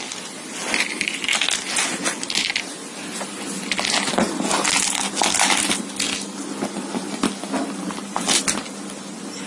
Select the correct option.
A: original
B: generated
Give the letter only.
A